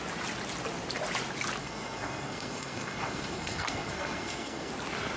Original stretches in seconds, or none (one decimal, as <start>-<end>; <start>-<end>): 0.0-1.6; 4.7-5.2